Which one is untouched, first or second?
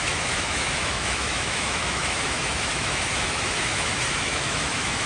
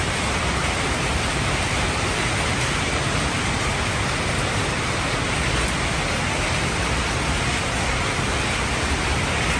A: second